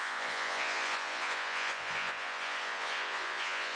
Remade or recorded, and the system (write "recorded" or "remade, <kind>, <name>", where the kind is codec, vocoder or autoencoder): remade, vocoder, Vocos